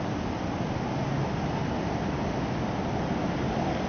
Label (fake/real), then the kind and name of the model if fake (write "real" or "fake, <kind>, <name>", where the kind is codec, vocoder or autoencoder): real